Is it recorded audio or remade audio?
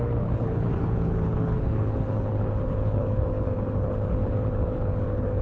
remade